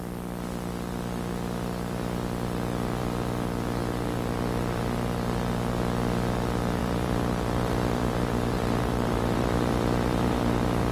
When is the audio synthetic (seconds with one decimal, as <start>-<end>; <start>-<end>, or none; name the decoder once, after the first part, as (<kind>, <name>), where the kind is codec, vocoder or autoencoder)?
6.8-10.9 (vocoder, BigVGAN v2)